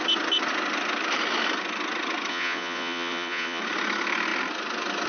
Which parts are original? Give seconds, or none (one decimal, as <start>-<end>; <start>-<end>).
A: 0.0-2.3; 3.6-5.1